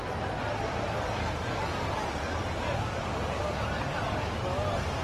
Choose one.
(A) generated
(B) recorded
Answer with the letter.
B